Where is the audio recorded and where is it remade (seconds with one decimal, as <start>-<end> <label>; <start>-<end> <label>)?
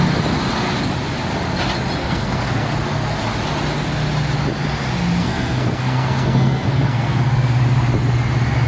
0.0-2.0 recorded; 2.0-2.7 remade; 2.7-5.2 recorded; 5.2-7.6 remade; 7.6-8.7 recorded